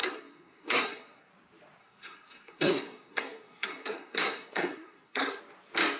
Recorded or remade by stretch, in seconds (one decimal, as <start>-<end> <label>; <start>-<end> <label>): 0.0-1.3 remade; 1.3-1.8 recorded; 1.8-5.4 remade; 5.4-6.0 recorded